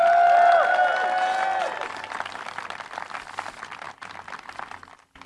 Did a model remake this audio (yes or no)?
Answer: no